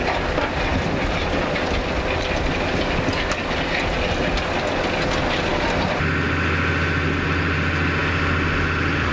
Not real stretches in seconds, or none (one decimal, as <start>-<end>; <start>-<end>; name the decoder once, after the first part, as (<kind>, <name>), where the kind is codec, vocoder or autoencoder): none